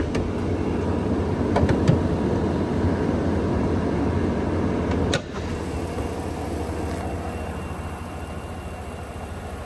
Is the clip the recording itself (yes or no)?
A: yes